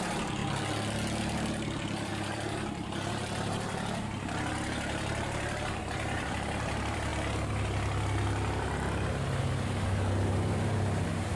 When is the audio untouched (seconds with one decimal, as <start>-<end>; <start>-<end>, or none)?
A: 0.4-1.2; 7.1-9.4